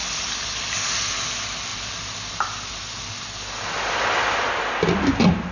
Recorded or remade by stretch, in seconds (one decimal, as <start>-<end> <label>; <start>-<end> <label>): 0.0-5.5 recorded